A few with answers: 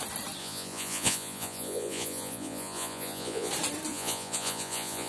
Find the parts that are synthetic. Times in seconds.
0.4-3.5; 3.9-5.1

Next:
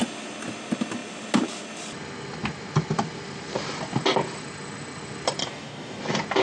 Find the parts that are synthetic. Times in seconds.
5.4-6.0

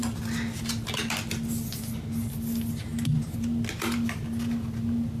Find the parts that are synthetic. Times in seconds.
none

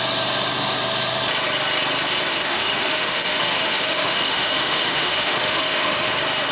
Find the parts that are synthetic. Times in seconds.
2.3-6.1

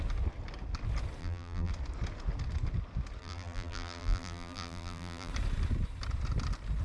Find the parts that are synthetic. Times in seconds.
1.2-1.7; 3.2-5.3

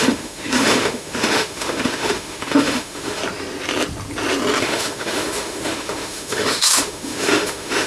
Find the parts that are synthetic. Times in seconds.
0.0-3.2; 4.6-7.9

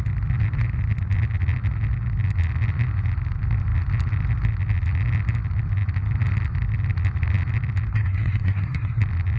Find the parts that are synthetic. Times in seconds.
7.9-9.0

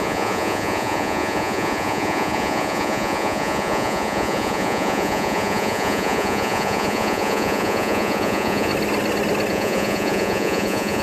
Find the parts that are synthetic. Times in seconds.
0.0-8.7; 9.5-11.0